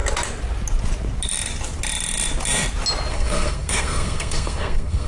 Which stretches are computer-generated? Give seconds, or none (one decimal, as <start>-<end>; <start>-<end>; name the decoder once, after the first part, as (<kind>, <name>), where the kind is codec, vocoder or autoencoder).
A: 3.1-5.1 (codec, SNAC)